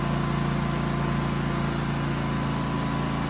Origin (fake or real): real